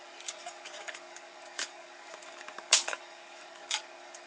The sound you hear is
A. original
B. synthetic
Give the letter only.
B